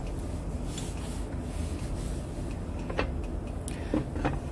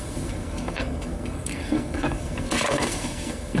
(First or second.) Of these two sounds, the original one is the first